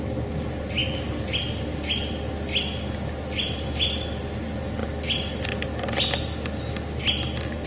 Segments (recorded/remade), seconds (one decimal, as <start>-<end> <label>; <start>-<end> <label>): 0.0-7.7 recorded

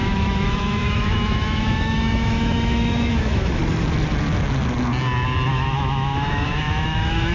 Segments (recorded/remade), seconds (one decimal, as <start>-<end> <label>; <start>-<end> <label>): 0.0-3.6 remade; 3.6-5.5 recorded; 5.5-7.3 remade

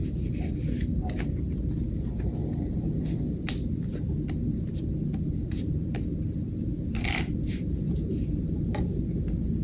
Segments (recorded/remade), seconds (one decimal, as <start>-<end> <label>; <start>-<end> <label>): 0.0-2.4 remade; 2.4-5.2 recorded; 5.2-9.6 remade

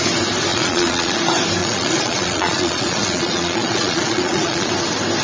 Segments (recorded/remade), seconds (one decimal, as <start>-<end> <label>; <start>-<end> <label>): 0.0-0.5 recorded; 0.5-1.2 remade; 1.2-1.6 recorded; 1.6-4.7 remade; 4.7-5.2 recorded

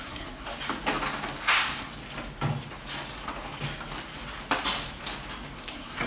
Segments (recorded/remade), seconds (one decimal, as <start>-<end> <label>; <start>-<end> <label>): 0.0-0.5 remade; 0.5-1.5 recorded; 1.5-1.9 remade; 1.9-5.6 recorded; 5.6-6.1 remade

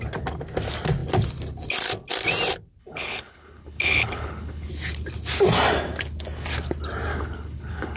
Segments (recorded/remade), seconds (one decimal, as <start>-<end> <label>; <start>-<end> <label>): 0.0-2.8 recorded; 2.8-4.7 remade; 4.7-7.1 recorded; 7.1-8.0 remade

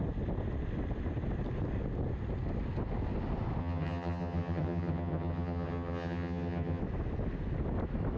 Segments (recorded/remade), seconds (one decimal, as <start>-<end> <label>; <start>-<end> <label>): 0.0-3.6 recorded; 3.6-6.8 remade; 6.8-8.2 recorded